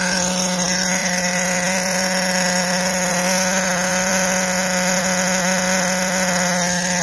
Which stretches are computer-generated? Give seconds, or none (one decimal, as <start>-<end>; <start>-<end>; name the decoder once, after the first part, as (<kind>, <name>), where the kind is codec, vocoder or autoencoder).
1.0-3.1 (vocoder, BigVGAN v2); 3.9-5.0